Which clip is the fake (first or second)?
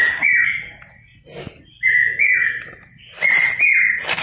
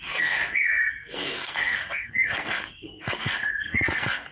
second